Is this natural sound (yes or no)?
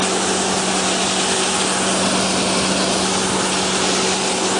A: yes